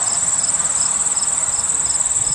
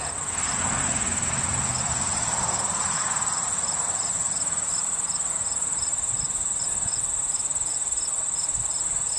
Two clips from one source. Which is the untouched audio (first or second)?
first